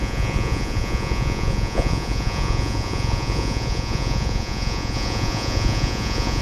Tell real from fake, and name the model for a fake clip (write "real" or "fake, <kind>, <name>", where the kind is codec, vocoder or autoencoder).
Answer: fake, vocoder, Vocos